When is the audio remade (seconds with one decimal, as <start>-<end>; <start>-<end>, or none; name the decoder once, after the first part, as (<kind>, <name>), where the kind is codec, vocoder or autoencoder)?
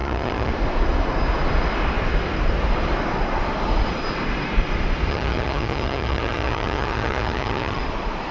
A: 0.0-0.5 (vocoder, HiFi-GAN); 5.1-7.8